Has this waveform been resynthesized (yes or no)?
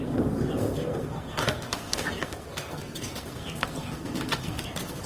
yes